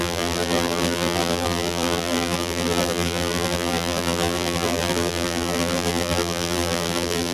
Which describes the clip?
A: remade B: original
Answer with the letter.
A